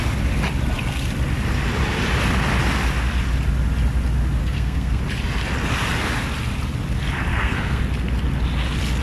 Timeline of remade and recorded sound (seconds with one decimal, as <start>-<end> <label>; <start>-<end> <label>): 0.0-4.4 recorded; 4.4-5.0 remade; 5.0-7.3 recorded; 7.3-7.8 remade; 7.8-9.0 recorded